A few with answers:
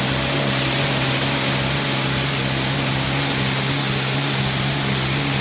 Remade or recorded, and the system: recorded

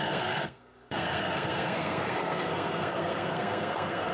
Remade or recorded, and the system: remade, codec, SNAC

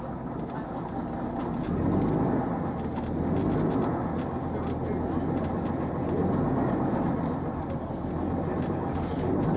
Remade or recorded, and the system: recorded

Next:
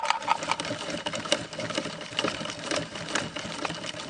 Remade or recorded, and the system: recorded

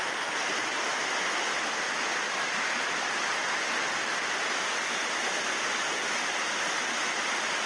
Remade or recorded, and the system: recorded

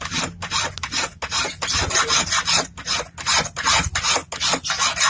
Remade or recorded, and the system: recorded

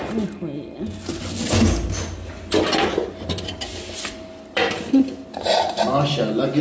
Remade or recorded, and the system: recorded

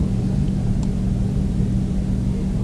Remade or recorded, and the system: recorded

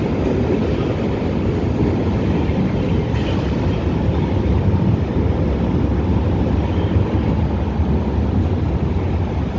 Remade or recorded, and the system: recorded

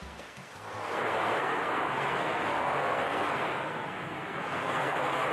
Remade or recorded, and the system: remade, codec, SNAC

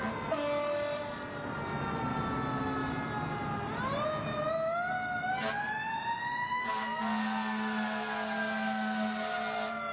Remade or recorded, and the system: recorded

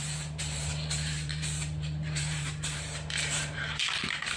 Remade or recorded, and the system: remade, vocoder, BigVGAN v2